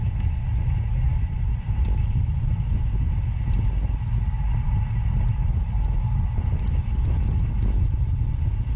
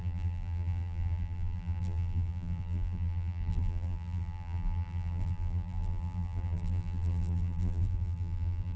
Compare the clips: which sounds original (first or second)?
first